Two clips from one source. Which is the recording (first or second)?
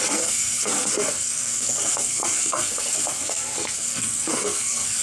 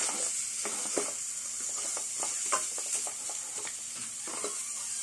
second